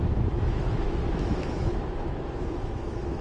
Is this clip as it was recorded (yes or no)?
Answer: no